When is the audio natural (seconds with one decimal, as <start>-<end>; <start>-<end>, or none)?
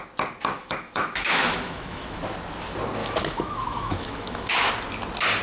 0.0-0.6; 2.2-3.0; 4.7-5.4